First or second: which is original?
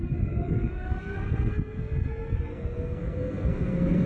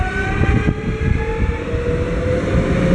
second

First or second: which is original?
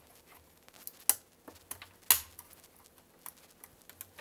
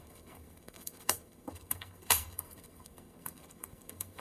first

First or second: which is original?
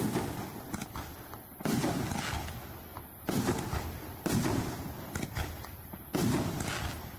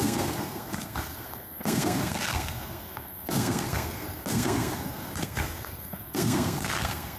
first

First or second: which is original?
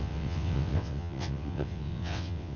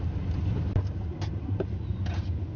second